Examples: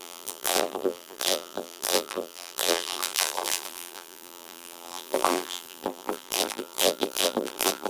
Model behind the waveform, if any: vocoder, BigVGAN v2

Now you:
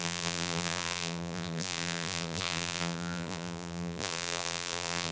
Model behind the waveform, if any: vocoder, BigVGAN v2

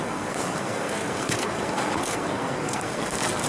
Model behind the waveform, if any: codec, SNAC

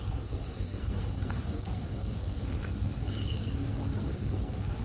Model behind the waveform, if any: codec, SNAC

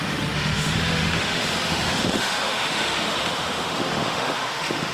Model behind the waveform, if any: autoencoder, DAC-VAE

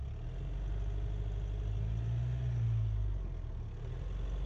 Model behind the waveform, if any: none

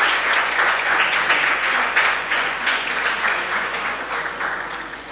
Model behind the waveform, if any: vocoder, Vocos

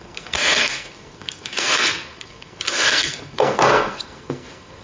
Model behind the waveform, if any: codec, SNAC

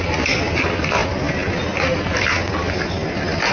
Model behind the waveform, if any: none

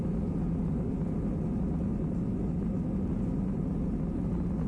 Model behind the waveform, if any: none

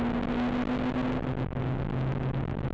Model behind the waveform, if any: none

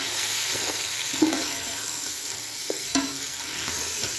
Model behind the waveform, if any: codec, SNAC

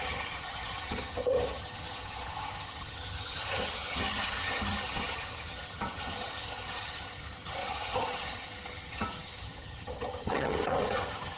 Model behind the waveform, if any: vocoder, HiFi-GAN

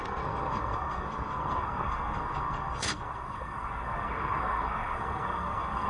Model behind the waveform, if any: codec, SNAC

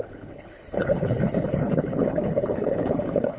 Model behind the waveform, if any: codec, HILCodec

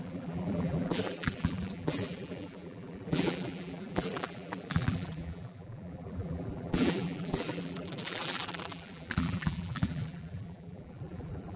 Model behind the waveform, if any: vocoder, BigVGAN v2